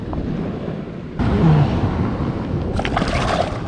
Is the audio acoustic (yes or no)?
yes